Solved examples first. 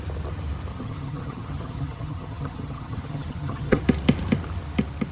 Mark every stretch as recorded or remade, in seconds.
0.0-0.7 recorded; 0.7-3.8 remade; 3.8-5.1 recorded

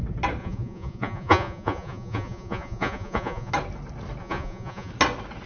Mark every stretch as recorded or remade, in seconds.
0.0-0.4 recorded; 0.4-3.5 remade; 3.5-4.2 recorded; 4.2-4.9 remade; 4.9-5.5 recorded

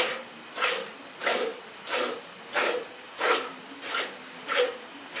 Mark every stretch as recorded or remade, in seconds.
0.0-1.5 recorded; 1.5-3.9 remade; 3.9-5.2 recorded

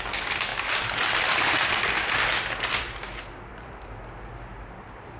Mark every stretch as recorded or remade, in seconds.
0.0-5.2 recorded

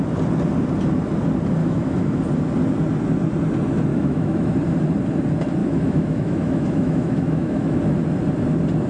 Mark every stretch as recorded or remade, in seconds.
0.0-1.6 recorded; 1.6-2.2 remade; 2.2-3.9 recorded; 3.9-4.5 remade; 4.5-5.6 recorded; 5.6-7.8 remade; 7.8-8.9 recorded

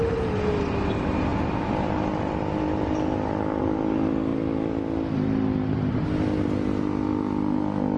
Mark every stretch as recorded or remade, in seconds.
0.0-8.0 recorded

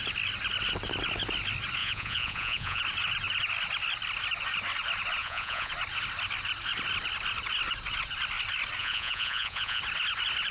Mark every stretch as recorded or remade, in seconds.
0.0-1.8 recorded; 1.8-2.8 remade; 2.8-5.2 recorded; 5.2-5.7 remade; 5.7-8.8 recorded; 8.8-9.8 remade; 9.8-10.5 recorded

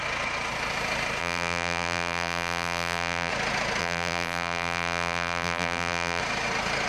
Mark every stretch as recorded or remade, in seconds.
0.0-1.2 recorded; 1.2-3.3 remade; 3.3-3.8 recorded; 3.8-6.2 remade; 6.2-6.9 recorded